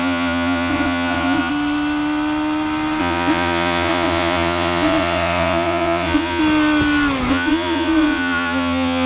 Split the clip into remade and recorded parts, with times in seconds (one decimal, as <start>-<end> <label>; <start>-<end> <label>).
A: 0.0-1.5 remade; 1.5-3.0 recorded; 3.0-6.4 remade; 6.4-7.3 recorded; 7.3-9.1 remade